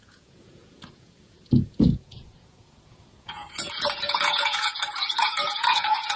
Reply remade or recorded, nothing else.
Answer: remade